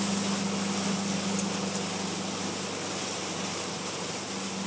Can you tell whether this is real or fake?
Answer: real